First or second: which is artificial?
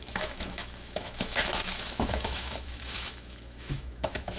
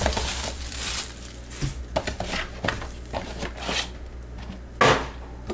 first